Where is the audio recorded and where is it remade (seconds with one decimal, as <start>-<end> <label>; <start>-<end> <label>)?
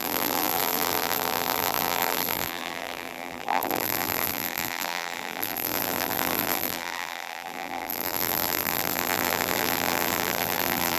0.0-11.0 remade